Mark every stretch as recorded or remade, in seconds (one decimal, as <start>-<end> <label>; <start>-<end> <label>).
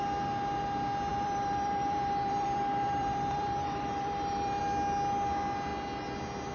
0.0-1.1 recorded; 1.1-4.6 remade; 4.6-6.5 recorded